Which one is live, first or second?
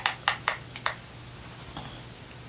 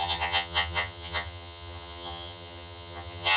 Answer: first